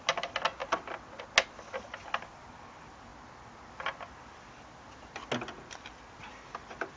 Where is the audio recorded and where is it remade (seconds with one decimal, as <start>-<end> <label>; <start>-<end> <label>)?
0.0-7.0 recorded